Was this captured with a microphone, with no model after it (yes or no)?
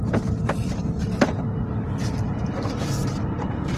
no